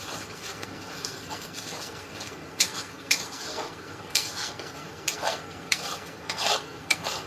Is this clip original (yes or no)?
no